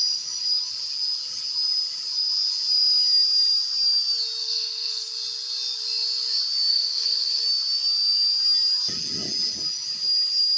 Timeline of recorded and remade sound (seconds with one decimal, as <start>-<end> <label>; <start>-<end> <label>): 0.0-4.4 recorded; 4.4-5.1 remade; 5.1-6.7 recorded; 6.7-7.4 remade; 7.4-10.6 recorded